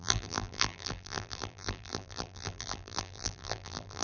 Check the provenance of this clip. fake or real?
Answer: fake